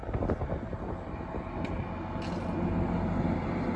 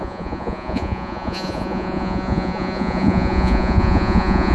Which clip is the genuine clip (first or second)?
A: first